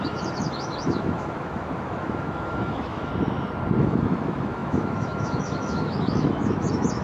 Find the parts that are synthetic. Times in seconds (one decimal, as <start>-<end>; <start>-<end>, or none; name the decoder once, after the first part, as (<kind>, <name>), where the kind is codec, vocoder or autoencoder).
0.0-3.1 (autoencoder, DAC-VAE); 3.8-7.0